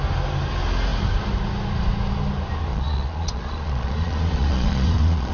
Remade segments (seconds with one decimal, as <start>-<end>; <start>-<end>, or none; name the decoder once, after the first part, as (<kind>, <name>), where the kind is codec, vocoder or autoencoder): 2.7-5.3 (vocoder, Vocos)